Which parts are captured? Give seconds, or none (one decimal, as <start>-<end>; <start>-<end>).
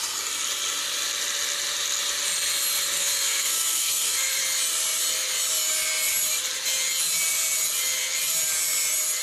0.0-3.0; 4.4-9.2